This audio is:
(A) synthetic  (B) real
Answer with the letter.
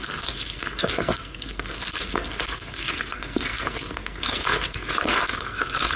A